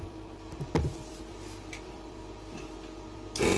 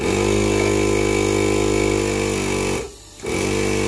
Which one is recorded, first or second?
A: second